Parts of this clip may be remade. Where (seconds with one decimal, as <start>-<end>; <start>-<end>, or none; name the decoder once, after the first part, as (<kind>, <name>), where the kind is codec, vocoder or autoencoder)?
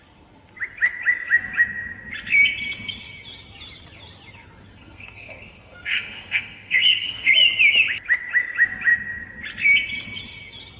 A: 4.7-7.3 (codec, SNAC)